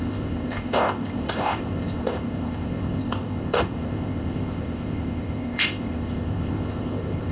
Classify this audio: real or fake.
fake